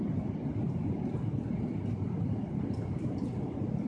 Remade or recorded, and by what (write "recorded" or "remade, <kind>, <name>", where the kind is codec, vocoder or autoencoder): recorded